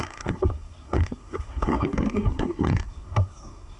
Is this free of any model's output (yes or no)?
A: no